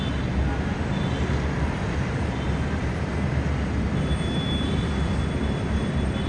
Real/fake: real